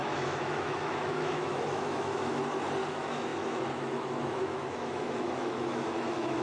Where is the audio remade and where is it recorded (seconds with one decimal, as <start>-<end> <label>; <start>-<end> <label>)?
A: 0.0-2.4 remade; 2.4-2.9 recorded; 2.9-6.4 remade

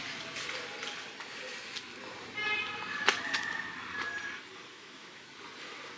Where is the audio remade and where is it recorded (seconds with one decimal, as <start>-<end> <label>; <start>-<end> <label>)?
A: 0.0-4.7 recorded; 4.7-5.3 remade; 5.3-6.0 recorded

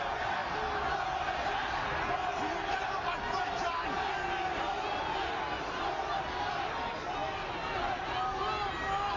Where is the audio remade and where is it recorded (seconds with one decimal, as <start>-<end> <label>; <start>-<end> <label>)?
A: 0.0-9.2 recorded

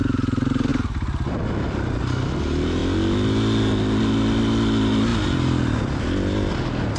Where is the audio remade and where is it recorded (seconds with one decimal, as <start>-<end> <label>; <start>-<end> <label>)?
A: 0.0-7.0 recorded

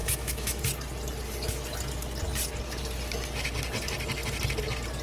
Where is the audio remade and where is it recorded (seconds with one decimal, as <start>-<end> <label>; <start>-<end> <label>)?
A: 0.0-0.6 remade; 0.6-5.0 recorded

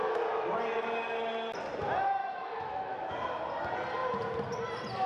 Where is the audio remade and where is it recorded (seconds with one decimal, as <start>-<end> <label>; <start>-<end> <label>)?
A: 0.0-2.2 recorded; 2.2-3.1 remade; 3.1-5.1 recorded

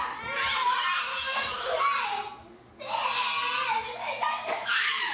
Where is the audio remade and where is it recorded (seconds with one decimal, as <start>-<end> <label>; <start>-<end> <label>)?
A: 0.0-1.1 recorded; 1.1-1.8 remade; 1.8-3.7 recorded; 3.7-5.1 remade

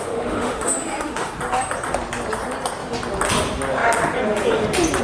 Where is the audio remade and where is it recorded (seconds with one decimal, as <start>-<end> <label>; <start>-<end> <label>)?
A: 0.0-1.3 remade; 1.3-5.0 recorded